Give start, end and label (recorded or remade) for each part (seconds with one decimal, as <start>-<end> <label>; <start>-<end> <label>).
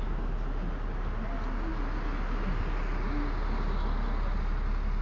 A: 0.0-5.0 recorded